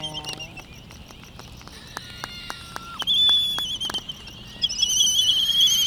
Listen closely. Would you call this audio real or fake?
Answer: real